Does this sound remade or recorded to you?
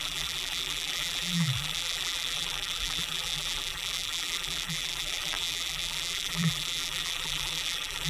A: remade